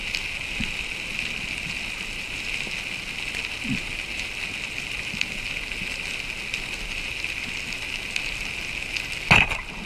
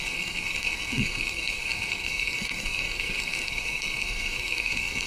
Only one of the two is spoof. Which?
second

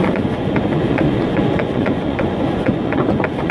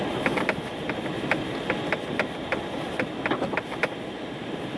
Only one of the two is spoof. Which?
first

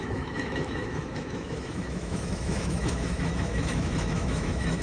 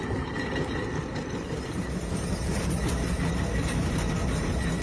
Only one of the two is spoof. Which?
first